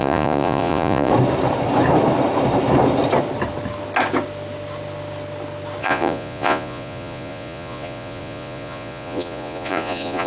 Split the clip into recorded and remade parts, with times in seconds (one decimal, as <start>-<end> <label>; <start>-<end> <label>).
0.0-1.1 remade; 1.1-5.8 recorded; 5.8-10.3 remade